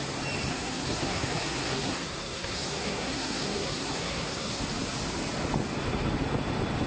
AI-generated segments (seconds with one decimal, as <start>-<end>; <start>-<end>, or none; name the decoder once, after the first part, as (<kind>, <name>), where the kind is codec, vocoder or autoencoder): 0.5-4.6 (codec, SNAC)